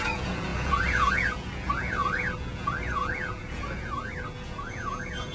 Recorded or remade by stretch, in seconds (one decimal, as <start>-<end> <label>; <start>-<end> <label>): 0.0-5.3 remade